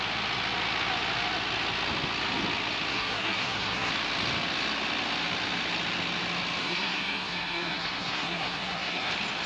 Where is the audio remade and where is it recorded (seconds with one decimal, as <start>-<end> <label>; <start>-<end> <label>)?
0.0-2.9 recorded; 2.9-3.9 remade; 3.9-6.6 recorded; 6.6-9.1 remade; 9.1-9.5 recorded